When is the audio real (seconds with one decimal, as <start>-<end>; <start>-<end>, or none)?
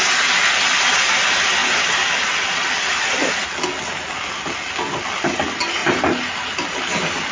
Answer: 0.0-7.3